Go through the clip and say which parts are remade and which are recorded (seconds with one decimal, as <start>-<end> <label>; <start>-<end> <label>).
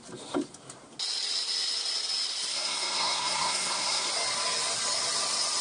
0.0-2.5 recorded; 2.5-4.1 remade; 4.1-5.6 recorded